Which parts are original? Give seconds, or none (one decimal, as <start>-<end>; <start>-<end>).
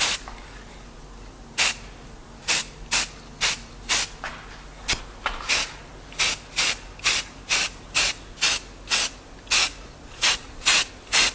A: 0.0-9.6; 10.9-11.3